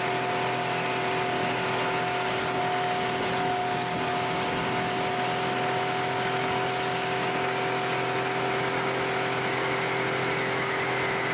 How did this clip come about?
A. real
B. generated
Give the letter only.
A